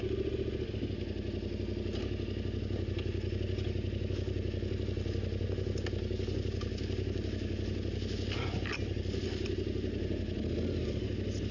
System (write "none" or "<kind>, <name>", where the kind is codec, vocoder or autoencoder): none